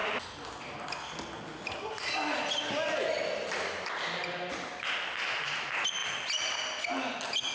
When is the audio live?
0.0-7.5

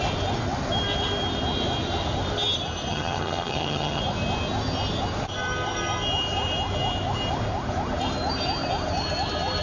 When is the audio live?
0.0-2.9; 4.0-9.6

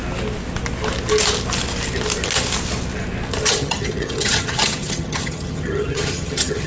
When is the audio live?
0.0-3.5

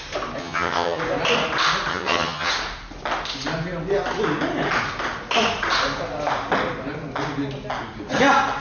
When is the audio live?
0.0-0.4; 1.0-1.9; 2.5-8.6